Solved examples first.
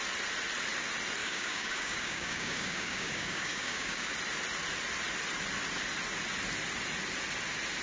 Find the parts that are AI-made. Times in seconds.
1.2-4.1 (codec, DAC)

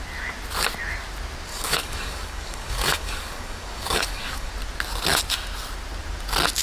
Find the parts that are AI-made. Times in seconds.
1.5-4.5 (codec, DAC)

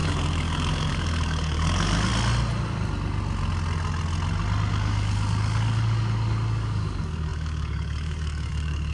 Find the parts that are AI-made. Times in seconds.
0.0-2.1 (codec, DAC); 4.7-8.9

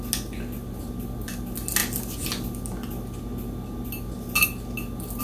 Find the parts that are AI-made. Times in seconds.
none

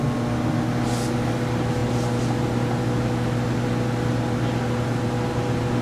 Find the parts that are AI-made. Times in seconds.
none